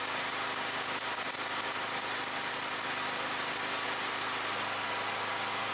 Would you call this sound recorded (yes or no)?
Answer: yes